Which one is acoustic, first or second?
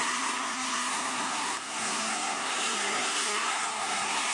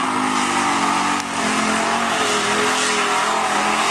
second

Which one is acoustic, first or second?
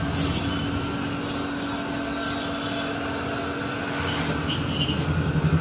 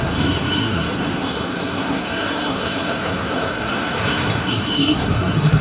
first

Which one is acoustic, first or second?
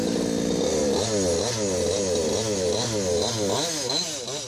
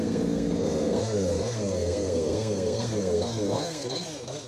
first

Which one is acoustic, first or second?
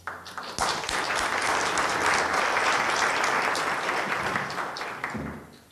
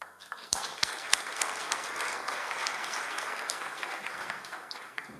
first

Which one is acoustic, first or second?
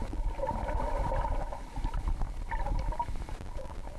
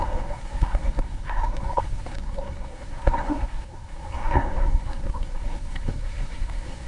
first